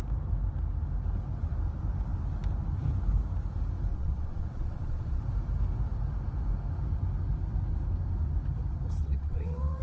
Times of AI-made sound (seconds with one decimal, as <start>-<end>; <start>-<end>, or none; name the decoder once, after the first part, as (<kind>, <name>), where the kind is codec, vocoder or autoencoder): 3.9-5.2 (vocoder, WaveNeXt); 9.0-9.8